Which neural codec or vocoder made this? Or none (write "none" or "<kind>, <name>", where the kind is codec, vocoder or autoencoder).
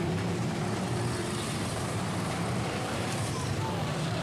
vocoder, BigVGAN v2